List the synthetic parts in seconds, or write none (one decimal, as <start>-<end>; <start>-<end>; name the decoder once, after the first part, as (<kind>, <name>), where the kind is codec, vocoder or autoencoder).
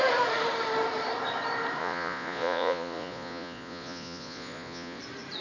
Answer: 1.8-5.0 (vocoder, Vocos)